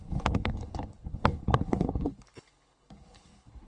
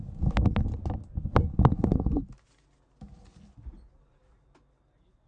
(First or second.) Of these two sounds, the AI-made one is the first